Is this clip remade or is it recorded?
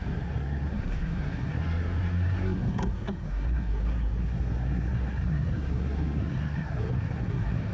remade